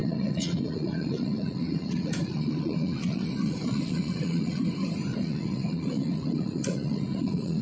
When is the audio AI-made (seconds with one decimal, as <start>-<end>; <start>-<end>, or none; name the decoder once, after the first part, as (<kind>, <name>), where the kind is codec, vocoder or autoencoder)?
0.0-4.6 (vocoder, Vocos); 5.1-7.6